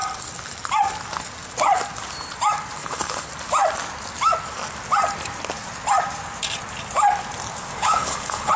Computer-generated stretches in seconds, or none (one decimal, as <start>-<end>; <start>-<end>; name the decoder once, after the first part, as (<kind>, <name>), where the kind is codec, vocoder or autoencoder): 2.8-3.3 (codec, HILCodec); 7.7-8.6